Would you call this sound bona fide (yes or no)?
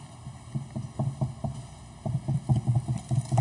yes